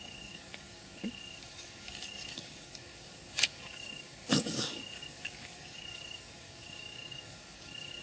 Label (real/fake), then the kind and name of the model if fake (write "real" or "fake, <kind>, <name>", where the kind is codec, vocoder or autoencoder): fake, codec, DAC